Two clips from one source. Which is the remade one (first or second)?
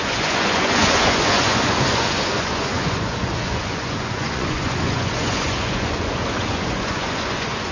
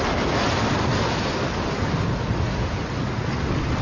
first